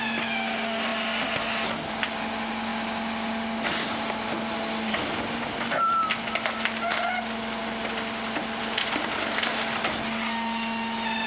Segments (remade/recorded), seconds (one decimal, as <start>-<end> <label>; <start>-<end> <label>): 0.0-11.3 recorded